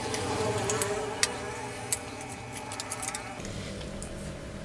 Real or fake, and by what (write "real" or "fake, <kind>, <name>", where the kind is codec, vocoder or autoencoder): real